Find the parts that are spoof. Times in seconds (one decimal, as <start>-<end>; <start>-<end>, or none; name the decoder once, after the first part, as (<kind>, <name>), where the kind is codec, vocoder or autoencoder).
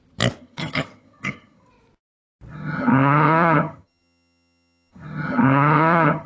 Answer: 0.4-1.7 (vocoder, HiFi-GAN); 2.5-6.3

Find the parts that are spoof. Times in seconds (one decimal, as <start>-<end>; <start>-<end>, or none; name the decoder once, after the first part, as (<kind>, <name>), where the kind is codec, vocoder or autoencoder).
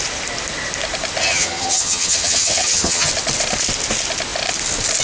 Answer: 1.2-3.1 (vocoder, HiFi-GAN)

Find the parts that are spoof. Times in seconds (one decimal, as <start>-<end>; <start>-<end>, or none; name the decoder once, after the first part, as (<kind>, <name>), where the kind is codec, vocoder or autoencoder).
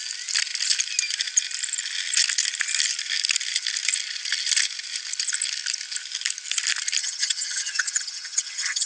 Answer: 7.0-8.9 (vocoder, HiFi-GAN)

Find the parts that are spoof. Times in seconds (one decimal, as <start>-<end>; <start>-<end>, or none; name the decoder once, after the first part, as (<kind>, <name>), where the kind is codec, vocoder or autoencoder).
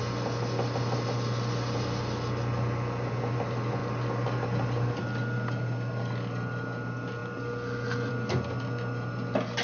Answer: none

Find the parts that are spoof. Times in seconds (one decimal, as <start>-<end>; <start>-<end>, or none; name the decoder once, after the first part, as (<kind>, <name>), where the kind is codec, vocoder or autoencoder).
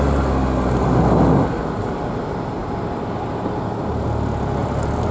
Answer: none